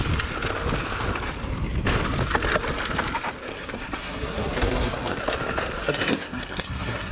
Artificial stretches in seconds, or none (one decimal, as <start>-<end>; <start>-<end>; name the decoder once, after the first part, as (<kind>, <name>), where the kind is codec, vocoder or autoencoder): 3.5-5.2 (codec, SNAC); 5.8-7.1